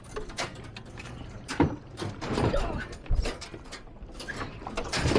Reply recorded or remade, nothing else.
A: remade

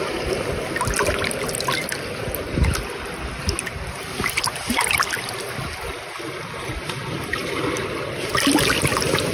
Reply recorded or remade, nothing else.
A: recorded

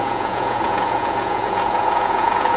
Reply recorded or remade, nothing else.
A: remade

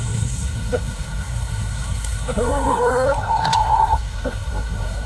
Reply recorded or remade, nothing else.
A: remade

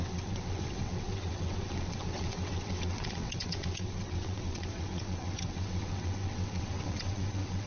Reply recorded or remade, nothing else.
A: remade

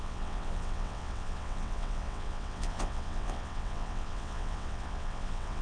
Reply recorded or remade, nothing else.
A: remade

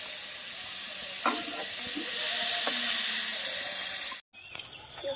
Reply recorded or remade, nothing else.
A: recorded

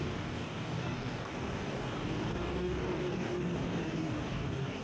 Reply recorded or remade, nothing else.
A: remade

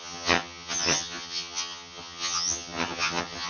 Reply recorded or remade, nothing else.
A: remade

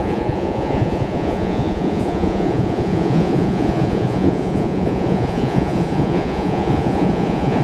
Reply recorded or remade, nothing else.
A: remade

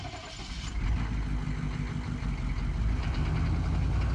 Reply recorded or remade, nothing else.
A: recorded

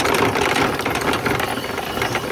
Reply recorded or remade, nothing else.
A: remade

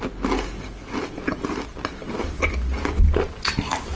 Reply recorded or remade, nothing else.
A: recorded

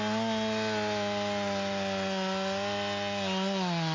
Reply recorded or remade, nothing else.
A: recorded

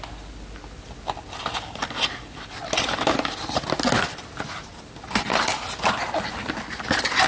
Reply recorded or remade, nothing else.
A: recorded